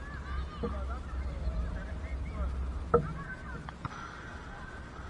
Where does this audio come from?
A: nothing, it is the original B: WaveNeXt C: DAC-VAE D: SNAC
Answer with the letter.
A